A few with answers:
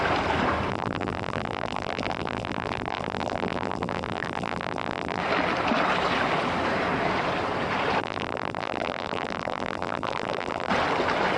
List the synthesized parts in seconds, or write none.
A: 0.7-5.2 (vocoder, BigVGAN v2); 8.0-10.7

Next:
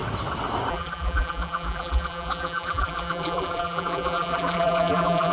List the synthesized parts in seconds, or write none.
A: 0.7-5.3 (vocoder, BigVGAN v2)

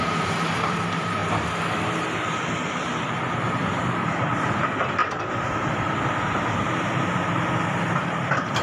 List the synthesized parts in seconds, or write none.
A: 0.0-1.2 (vocoder, BigVGAN v2); 2.8-8.6

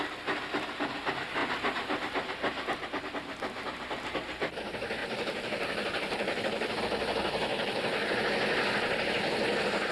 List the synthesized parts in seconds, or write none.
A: 5.0-6.8 (vocoder, BigVGAN v2); 7.5-8.2

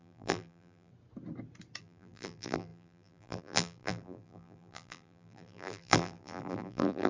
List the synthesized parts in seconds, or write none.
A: 0.0-0.9 (vocoder, BigVGAN v2); 1.8-7.1

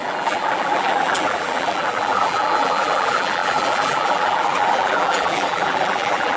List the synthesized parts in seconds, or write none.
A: 0.0-6.4 (vocoder, BigVGAN v2)

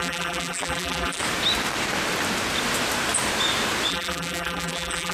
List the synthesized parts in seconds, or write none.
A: 0.0-1.2 (vocoder, BigVGAN v2); 3.9-5.1